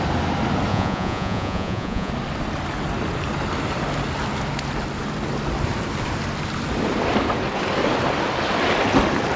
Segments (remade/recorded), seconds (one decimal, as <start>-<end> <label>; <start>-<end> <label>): 0.0-0.7 recorded; 0.7-2.1 remade; 2.1-9.4 recorded